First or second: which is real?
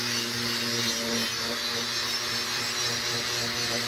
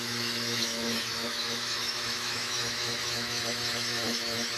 first